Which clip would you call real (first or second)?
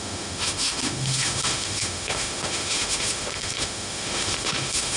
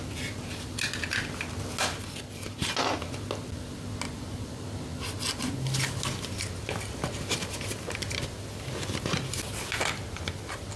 second